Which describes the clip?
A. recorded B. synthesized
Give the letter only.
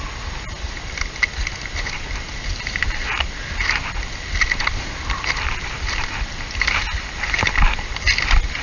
A